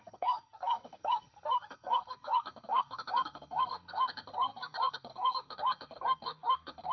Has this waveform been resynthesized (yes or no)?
yes